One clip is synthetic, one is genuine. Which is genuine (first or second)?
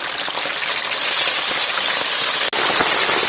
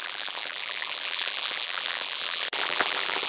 first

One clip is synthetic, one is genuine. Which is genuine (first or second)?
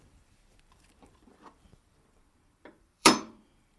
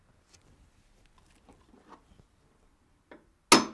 second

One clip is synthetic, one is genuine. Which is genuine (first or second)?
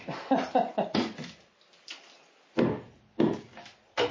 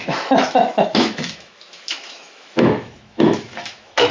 first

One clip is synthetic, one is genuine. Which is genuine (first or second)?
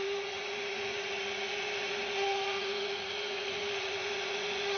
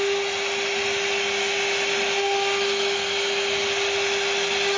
second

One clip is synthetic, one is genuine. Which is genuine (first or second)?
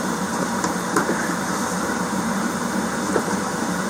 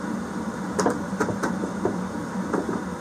second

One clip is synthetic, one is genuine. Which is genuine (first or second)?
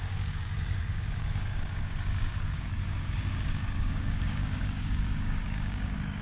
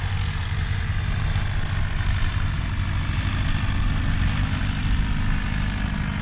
second